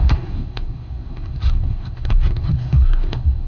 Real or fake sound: fake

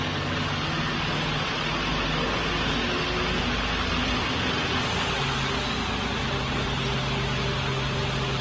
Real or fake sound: real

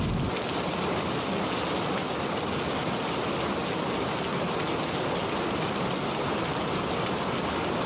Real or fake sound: real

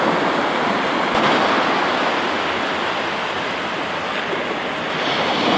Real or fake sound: real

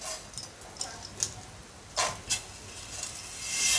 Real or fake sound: real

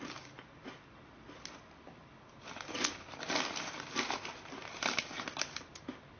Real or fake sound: real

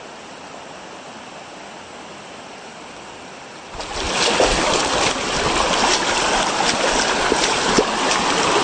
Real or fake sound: real